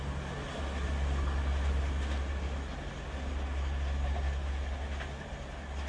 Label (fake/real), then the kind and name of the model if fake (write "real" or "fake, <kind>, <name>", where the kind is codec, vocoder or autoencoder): real